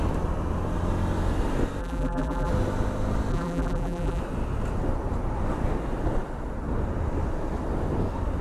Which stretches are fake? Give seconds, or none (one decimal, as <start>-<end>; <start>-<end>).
1.8-2.5; 3.3-4.2